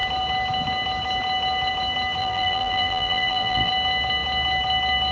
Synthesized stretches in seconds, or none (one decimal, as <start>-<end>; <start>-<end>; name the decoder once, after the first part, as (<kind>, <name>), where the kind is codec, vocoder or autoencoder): 2.2-3.7 (vocoder, BigVGAN v2)